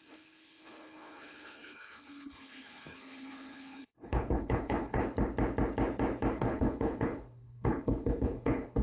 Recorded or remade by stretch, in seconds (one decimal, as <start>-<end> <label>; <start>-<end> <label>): 0.0-5.0 remade; 5.0-6.3 recorded; 6.3-8.8 remade